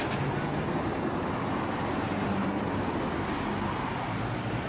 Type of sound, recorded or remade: recorded